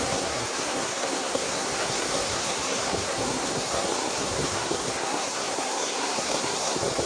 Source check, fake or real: fake